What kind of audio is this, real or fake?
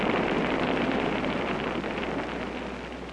fake